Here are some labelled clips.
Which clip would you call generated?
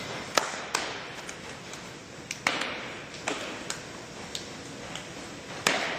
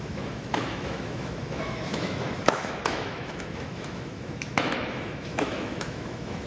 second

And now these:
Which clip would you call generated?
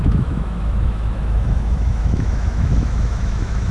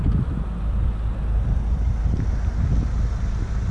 first